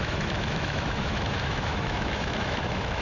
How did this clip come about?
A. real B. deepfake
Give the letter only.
B